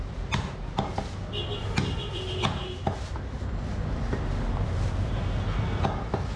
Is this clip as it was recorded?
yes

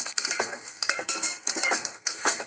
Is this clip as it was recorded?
no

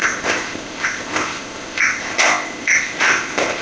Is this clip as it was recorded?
no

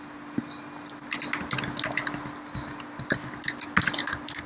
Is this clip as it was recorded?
yes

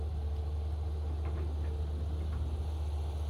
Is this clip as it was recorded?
yes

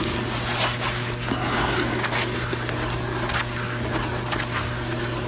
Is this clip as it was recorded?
yes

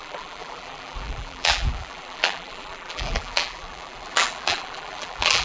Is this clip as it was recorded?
no